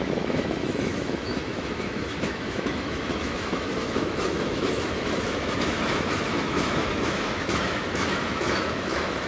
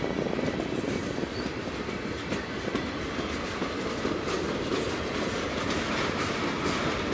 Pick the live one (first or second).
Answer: second